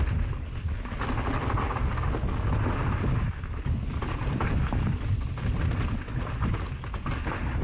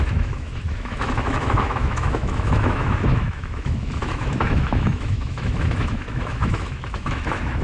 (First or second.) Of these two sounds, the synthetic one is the second